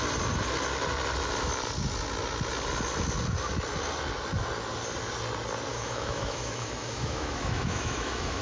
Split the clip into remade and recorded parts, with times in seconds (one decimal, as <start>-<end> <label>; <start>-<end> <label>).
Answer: 0.0-5.7 recorded; 5.7-8.4 remade